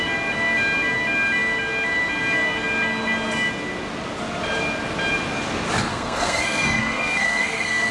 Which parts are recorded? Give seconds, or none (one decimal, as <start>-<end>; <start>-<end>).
0.0-5.9